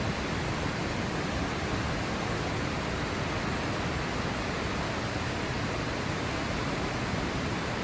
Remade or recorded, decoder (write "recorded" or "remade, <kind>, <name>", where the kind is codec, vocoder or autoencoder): recorded